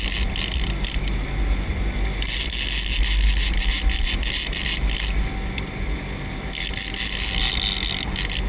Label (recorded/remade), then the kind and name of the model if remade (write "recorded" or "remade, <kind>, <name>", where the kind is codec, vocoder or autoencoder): recorded